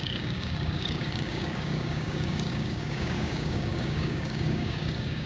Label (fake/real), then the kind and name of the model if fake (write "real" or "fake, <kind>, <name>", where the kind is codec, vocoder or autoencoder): fake, codec, DAC